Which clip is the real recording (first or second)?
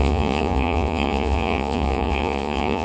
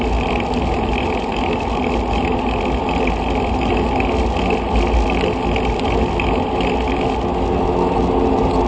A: second